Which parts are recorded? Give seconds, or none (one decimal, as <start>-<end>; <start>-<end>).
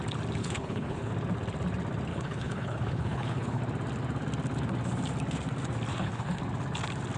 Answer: 0.0-0.4; 1.1-2.1; 3.6-5.9; 6.4-7.2